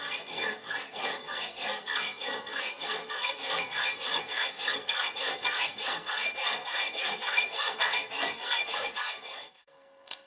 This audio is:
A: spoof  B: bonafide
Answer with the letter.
A